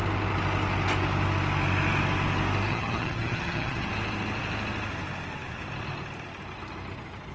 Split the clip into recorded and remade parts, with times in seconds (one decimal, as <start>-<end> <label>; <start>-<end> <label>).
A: 0.0-2.7 recorded; 2.7-3.9 remade; 3.9-7.3 recorded